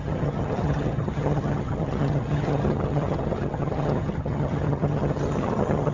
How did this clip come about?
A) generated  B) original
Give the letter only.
A